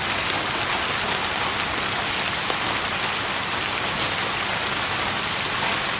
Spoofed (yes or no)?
no